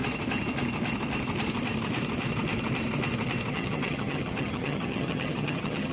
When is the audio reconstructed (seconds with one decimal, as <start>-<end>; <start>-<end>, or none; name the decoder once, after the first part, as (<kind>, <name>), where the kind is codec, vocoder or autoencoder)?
3.5-5.9 (vocoder, HiFi-GAN)

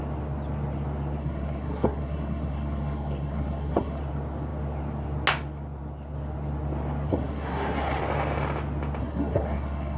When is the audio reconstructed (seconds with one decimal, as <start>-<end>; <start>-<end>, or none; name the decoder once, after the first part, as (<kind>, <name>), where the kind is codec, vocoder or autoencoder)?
1.2-4.0 (codec, SNAC); 7.1-8.0; 9.0-10.0

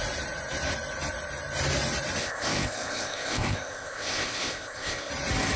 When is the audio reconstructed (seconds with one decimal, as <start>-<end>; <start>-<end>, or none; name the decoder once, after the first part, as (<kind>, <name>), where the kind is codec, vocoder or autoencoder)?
2.2-5.1 (codec, ZipCodec)

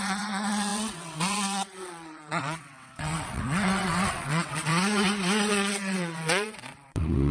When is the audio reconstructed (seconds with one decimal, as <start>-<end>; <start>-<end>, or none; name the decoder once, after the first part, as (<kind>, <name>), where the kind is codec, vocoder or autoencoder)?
0.0-4.7 (vocoder, WaveNeXt); 5.5-7.3

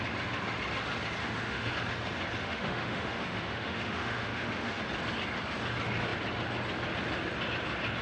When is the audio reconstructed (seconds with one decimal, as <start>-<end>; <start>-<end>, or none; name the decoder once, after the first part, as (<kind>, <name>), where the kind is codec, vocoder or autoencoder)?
1.2-1.7 (autoencoder, DAC-VAE); 2.4-4.8

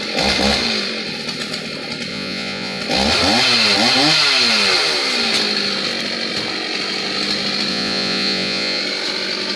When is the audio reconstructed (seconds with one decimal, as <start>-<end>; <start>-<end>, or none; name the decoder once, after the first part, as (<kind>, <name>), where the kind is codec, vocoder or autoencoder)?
2.1-2.8 (vocoder, Vocos); 7.7-8.8

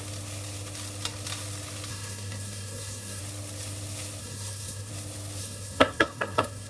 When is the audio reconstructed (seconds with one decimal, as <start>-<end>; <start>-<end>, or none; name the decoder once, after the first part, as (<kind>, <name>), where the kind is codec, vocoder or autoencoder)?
1.9-3.2 (codec, SNAC); 4.2-4.9; 5.4-6.7